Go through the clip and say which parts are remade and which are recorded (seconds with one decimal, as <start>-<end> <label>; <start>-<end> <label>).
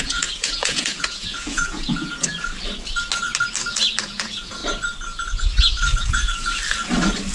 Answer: 0.0-2.3 remade; 2.3-4.0 recorded; 4.0-4.6 remade; 4.6-6.0 recorded; 6.0-6.6 remade; 6.6-7.3 recorded